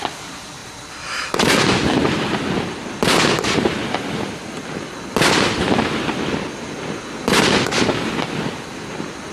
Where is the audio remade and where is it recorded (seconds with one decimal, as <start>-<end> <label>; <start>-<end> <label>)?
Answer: 0.0-9.3 recorded